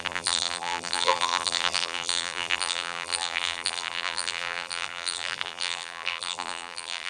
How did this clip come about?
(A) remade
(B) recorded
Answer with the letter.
A